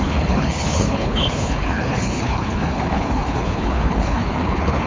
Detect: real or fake fake